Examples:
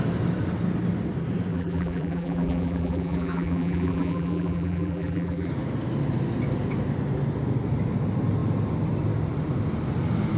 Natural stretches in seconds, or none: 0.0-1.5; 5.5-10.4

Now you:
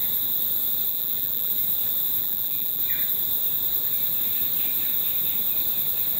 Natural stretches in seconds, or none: 0.0-0.9; 1.5-2.2; 2.8-6.2

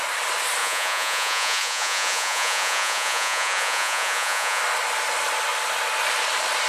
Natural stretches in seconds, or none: 0.0-0.6; 4.6-6.7

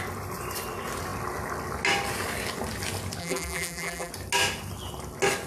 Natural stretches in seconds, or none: 0.0-3.2; 4.1-5.5

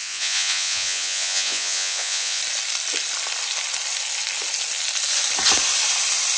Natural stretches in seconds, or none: 2.4-6.4

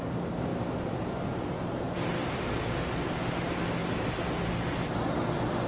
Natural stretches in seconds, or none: 0.0-5.7